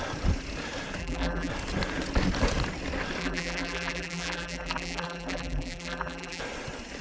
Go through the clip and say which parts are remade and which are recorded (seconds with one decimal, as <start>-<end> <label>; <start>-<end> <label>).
0.0-1.0 recorded; 1.0-1.5 remade; 1.5-3.2 recorded; 3.2-6.4 remade; 6.4-7.0 recorded